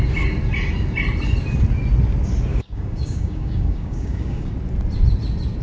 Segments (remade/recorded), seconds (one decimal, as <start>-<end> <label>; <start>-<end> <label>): 0.0-2.5 recorded; 2.5-4.5 remade; 4.5-5.6 recorded